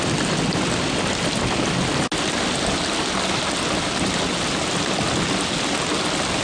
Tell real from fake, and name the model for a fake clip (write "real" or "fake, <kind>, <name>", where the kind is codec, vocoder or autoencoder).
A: real